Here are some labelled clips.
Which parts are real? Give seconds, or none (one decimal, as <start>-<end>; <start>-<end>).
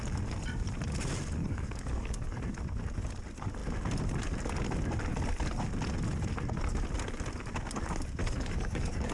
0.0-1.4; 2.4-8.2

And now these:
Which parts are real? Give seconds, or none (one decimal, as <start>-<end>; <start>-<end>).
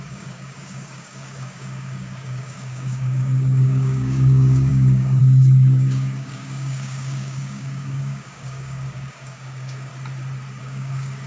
9.9-10.6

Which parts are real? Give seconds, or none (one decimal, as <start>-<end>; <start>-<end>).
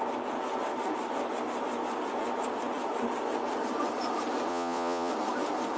0.0-4.5; 5.1-5.8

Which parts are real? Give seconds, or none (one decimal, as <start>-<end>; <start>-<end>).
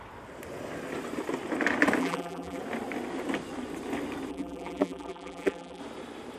0.0-2.0; 2.6-4.3; 5.8-6.4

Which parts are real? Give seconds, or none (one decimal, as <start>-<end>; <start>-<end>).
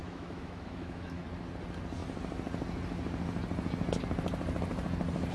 1.2-5.3